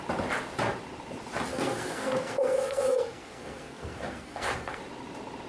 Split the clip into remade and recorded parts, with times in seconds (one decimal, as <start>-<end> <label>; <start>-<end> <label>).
0.0-1.5 recorded; 1.5-4.8 remade; 4.8-5.5 recorded